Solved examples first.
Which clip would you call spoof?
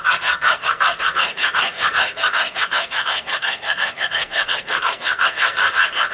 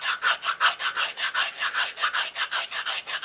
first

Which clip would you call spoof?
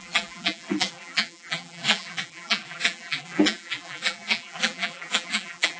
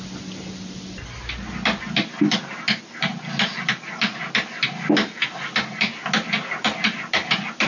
first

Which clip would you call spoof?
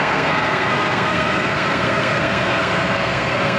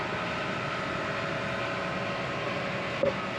first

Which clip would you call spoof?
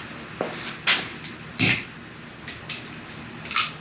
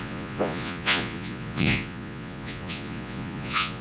second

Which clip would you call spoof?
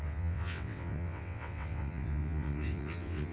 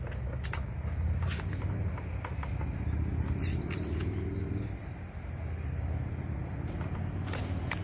first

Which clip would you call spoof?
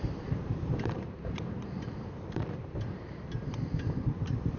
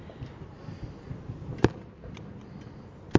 first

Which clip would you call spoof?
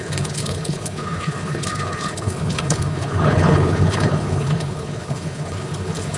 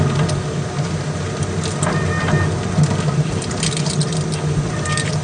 first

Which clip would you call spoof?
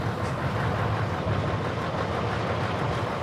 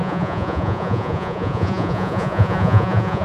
second